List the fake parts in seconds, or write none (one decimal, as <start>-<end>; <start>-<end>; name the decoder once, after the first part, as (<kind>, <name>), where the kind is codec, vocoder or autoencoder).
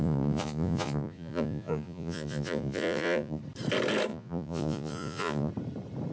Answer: 0.0-3.4 (vocoder, Vocos); 4.1-5.5